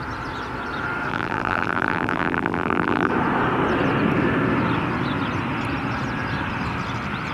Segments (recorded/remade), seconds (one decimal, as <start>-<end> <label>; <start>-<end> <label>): 0.0-1.1 recorded; 1.1-3.1 remade; 3.1-7.3 recorded